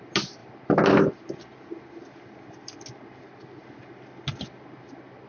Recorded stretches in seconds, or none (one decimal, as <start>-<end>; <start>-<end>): 0.0-5.3